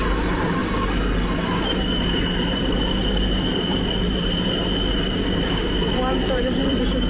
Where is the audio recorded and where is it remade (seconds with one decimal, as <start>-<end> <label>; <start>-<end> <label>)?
0.0-0.6 remade; 0.6-1.6 recorded; 1.6-7.1 remade